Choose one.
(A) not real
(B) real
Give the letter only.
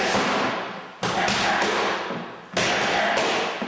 B